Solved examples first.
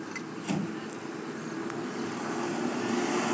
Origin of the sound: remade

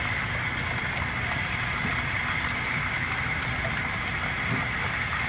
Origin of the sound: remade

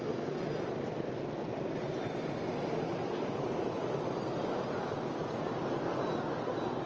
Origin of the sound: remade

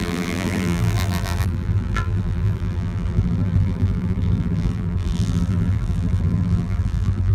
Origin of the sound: remade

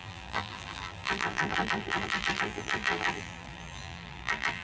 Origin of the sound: remade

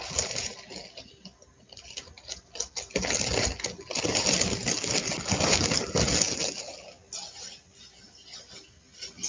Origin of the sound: recorded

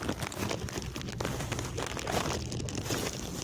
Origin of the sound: recorded